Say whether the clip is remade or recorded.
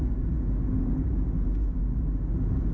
recorded